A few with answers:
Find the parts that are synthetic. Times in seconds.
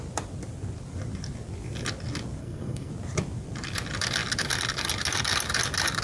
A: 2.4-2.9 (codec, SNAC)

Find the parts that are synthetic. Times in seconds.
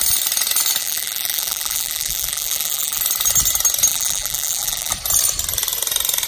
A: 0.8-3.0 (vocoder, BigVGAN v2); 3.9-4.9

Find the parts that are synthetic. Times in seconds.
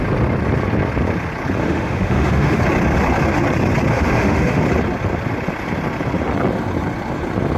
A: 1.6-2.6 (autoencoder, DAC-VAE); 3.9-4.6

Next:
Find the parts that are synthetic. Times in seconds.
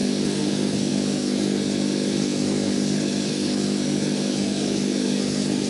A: 0.0-5.7 (codec, SNAC)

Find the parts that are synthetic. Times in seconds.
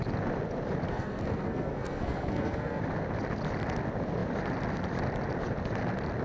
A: 0.9-2.8 (codec, SNAC)